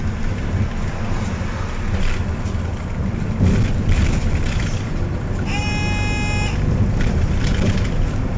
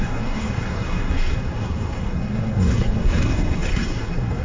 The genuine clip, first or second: first